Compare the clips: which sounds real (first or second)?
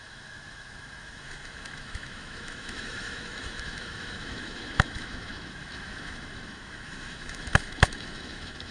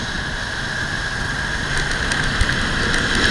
second